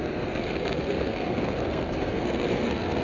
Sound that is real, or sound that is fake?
fake